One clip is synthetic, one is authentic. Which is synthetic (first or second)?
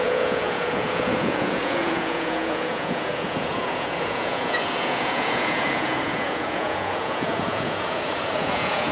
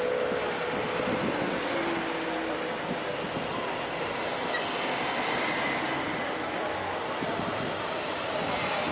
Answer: first